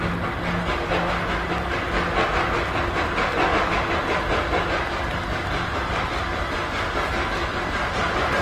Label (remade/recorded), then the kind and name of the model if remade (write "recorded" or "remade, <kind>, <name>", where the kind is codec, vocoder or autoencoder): recorded